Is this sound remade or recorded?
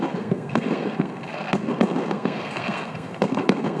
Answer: remade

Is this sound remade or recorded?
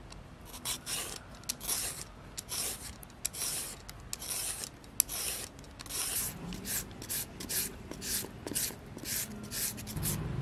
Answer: recorded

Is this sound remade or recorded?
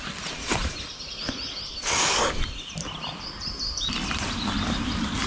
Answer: recorded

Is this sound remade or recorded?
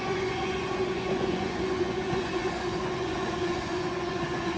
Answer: remade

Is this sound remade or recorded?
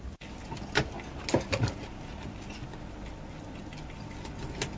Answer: recorded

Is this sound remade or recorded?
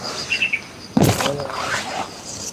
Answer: recorded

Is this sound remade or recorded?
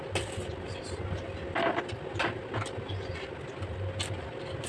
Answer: recorded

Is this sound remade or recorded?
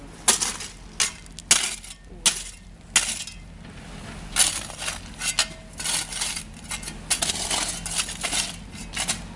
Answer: recorded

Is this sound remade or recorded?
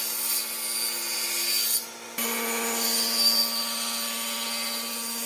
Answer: recorded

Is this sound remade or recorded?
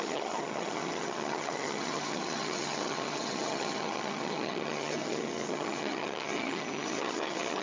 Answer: remade